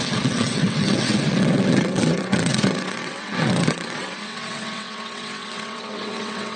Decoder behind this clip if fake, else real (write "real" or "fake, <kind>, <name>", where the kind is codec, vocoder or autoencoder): fake, vocoder, WaveNeXt